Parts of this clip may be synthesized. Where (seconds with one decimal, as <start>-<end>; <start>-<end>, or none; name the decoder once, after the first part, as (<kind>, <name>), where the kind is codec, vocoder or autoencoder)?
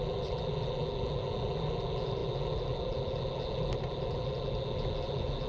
none